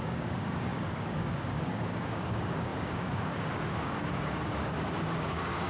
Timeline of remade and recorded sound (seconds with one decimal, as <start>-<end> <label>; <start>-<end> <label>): 0.0-5.7 remade